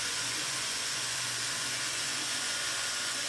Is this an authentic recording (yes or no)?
no